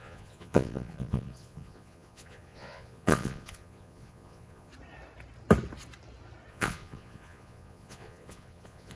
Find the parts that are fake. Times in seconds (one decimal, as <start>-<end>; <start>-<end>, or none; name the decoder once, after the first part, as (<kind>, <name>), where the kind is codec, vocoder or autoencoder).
0.0-4.7 (vocoder, Vocos); 6.5-9.0